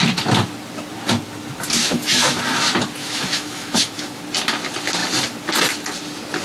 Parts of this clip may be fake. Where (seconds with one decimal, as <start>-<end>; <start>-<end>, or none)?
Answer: 1.8-2.4; 3.0-4.2